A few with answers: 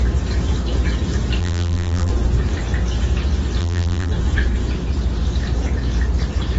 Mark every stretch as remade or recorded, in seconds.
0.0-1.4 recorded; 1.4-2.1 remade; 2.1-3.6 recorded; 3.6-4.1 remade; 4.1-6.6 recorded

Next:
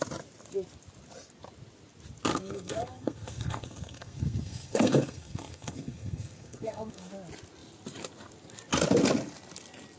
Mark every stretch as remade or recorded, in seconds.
0.0-2.3 recorded; 2.3-7.1 remade; 7.1-10.0 recorded

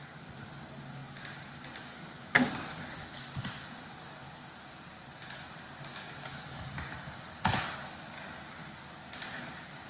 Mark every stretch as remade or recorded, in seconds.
0.0-9.9 recorded

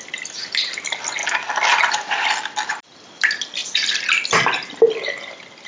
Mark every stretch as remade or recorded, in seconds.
0.0-5.7 recorded